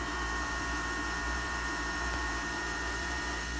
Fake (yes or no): yes